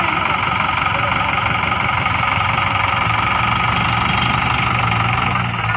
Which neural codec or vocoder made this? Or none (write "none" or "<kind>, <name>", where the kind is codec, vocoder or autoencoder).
none